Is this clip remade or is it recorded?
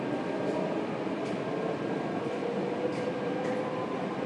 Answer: remade